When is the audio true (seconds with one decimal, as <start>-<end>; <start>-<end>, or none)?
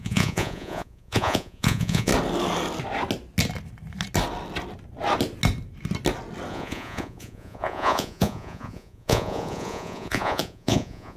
2.1-6.5